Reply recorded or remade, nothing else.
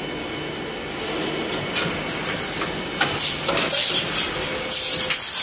recorded